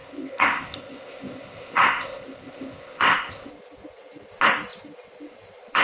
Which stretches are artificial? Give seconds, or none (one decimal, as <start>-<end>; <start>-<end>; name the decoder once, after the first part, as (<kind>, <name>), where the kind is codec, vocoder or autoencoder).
0.0-3.5 (codec, ZipCodec)